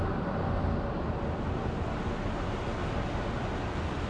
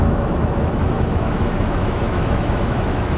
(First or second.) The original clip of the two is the first